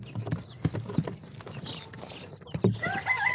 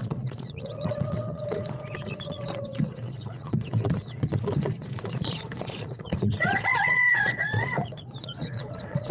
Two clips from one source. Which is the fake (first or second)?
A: second